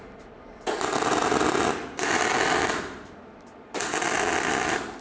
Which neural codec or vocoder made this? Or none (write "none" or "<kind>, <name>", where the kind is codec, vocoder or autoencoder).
vocoder, BigVGAN v2